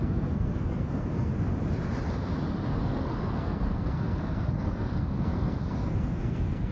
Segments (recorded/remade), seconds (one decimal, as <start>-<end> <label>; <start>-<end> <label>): 0.0-1.3 remade; 1.3-2.8 recorded; 2.8-6.7 remade